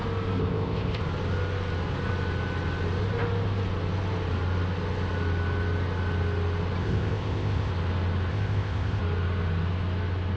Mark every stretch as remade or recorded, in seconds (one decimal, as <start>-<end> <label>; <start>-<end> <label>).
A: 0.0-0.4 recorded; 0.4-1.0 remade; 1.0-6.8 recorded; 6.8-7.7 remade; 7.7-8.3 recorded; 8.3-9.0 remade; 9.0-10.4 recorded